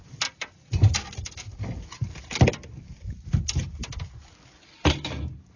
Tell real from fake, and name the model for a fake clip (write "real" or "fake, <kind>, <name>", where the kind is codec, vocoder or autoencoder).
real